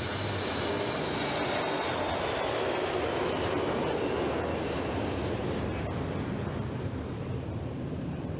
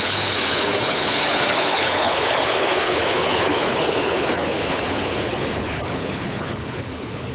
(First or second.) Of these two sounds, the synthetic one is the second